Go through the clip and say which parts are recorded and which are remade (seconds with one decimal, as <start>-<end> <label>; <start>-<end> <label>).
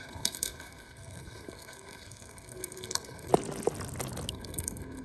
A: 0.0-3.3 remade; 3.3-4.3 recorded; 4.3-5.0 remade